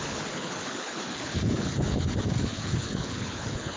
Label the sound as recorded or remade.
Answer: remade